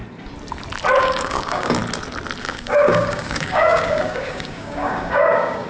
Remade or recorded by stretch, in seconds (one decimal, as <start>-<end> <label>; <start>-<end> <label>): 0.0-1.0 recorded; 1.0-1.8 remade; 1.8-2.4 recorded; 2.4-5.7 remade